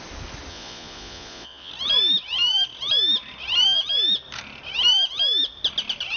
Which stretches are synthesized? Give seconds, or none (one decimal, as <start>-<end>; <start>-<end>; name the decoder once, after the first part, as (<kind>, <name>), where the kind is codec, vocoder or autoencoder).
0.5-1.7 (vocoder, Vocos)